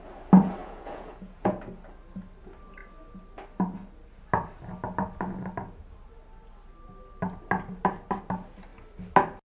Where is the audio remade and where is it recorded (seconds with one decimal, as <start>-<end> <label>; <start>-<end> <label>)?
0.0-0.6 recorded; 0.6-1.6 remade; 1.6-9.5 recorded